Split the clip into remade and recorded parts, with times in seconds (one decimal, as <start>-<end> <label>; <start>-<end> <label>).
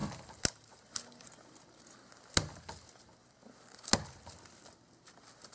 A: 0.0-5.5 recorded